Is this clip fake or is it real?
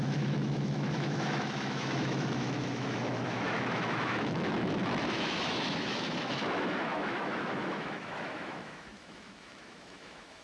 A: fake